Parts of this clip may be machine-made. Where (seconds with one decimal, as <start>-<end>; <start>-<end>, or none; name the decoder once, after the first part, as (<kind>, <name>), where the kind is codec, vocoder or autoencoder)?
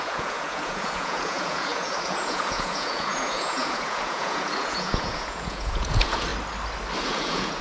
0.0-6.3 (vocoder, Vocos); 7.0-7.6